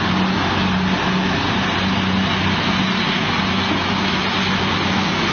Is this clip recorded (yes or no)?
yes